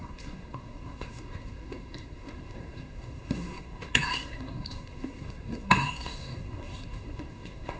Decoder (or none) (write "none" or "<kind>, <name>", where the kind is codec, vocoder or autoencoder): codec, SNAC